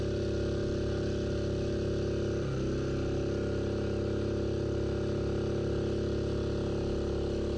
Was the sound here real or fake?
real